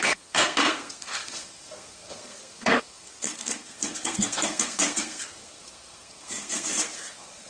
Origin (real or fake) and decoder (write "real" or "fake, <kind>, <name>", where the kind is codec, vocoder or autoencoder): fake, codec, SNAC